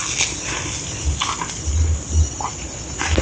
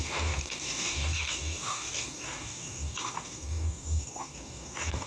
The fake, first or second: second